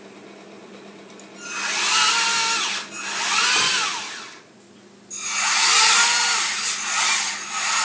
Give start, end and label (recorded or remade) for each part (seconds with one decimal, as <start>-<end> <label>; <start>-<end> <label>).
0.0-7.8 recorded